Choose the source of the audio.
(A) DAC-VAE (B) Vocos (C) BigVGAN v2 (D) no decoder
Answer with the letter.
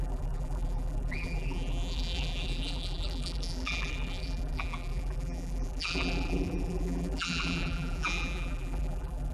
C